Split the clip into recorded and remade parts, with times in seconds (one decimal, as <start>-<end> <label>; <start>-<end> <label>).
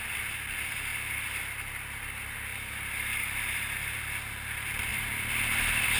0.0-2.5 recorded; 2.5-4.0 remade; 4.0-4.9 recorded; 4.9-6.0 remade